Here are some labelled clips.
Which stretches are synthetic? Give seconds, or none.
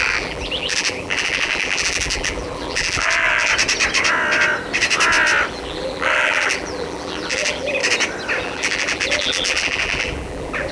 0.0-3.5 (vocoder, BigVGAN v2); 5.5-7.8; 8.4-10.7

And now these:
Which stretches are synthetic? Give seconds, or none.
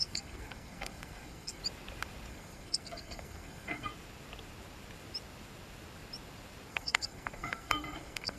0.0-1.6 (codec, SNAC); 2.3-3.9; 6.7-8.4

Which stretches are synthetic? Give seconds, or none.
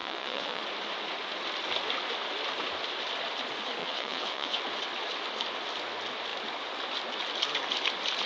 0.0-0.6 (vocoder, WaveNeXt); 3.8-4.6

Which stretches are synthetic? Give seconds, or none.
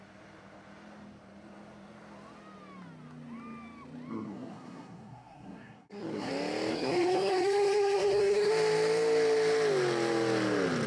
4.1-6.3 (codec, SNAC); 6.7-8.5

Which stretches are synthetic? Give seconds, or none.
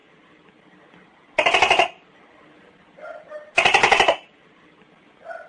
none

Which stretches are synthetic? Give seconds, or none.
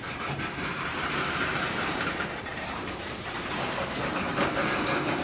0.0-5.2 (vocoder, BigVGAN v2)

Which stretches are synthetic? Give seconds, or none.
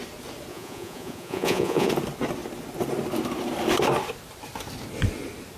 0.5-1.9 (vocoder, Vocos)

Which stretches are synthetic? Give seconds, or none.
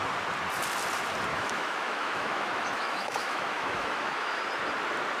1.3-4.4 (autoencoder, DAC-VAE)